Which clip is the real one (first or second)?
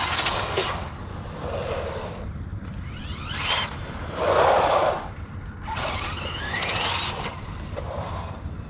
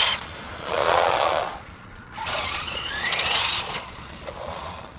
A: first